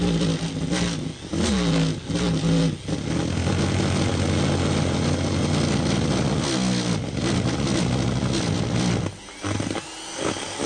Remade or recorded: recorded